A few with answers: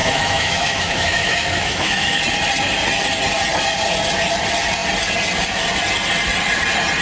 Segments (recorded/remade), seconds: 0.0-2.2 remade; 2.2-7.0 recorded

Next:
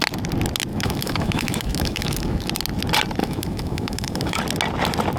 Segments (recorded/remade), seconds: 0.0-0.7 recorded; 0.7-2.5 remade; 2.5-3.2 recorded; 3.2-4.4 remade; 4.4-5.2 recorded

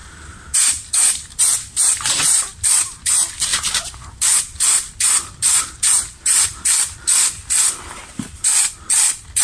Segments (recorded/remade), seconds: 0.0-1.4 remade; 1.4-9.4 recorded

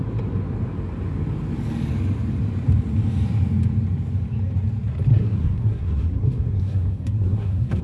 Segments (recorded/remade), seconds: 0.0-5.1 recorded; 5.1-7.8 remade

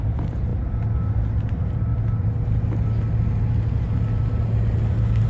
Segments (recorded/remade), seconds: 0.0-5.3 recorded

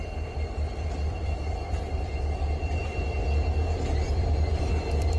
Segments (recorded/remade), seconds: 0.0-3.2 remade; 3.2-3.9 recorded; 3.9-5.2 remade

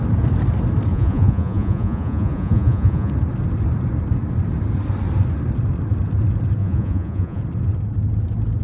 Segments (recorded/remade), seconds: 0.0-0.9 recorded; 0.9-3.1 remade; 3.1-6.6 recorded; 6.6-7.4 remade; 7.4-8.6 recorded